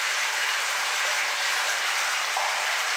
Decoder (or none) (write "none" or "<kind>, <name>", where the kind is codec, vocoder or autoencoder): vocoder, BigVGAN v2